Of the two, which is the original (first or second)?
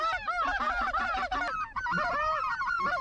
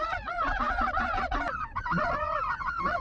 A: first